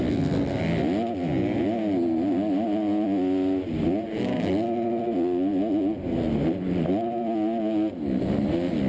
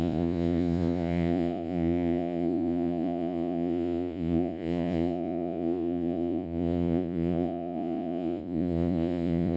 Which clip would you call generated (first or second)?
second